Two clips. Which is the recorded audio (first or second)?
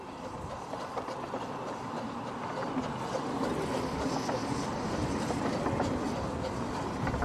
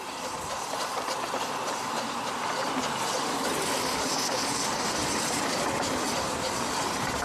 first